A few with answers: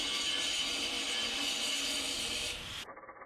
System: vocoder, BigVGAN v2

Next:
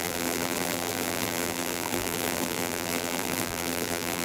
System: vocoder, BigVGAN v2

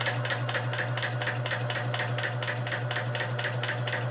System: none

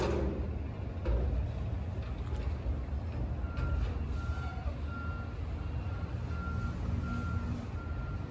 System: none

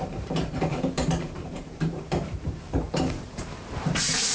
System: vocoder, BigVGAN v2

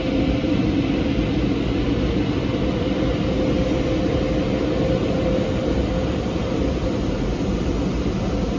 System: none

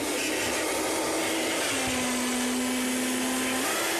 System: none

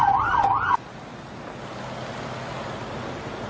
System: none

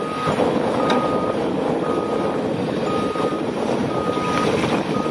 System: vocoder, BigVGAN v2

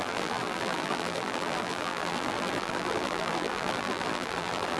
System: vocoder, BigVGAN v2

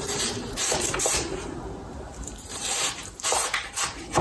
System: vocoder, BigVGAN v2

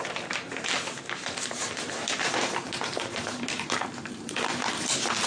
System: vocoder, BigVGAN v2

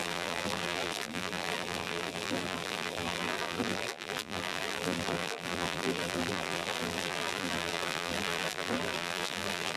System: vocoder, BigVGAN v2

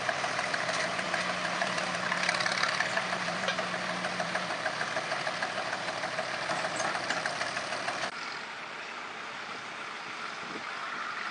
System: vocoder, BigVGAN v2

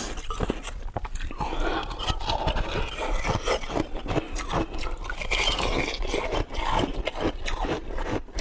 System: none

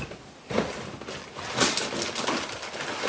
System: vocoder, BigVGAN v2